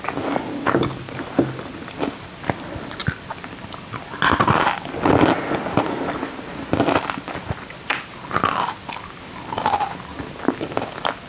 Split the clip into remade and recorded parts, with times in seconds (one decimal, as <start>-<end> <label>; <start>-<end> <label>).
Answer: 0.0-11.3 recorded